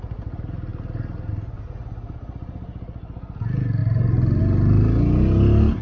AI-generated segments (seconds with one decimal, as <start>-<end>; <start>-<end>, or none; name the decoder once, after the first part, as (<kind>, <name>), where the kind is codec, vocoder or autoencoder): none